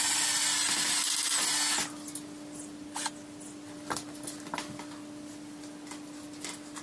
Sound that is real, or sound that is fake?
real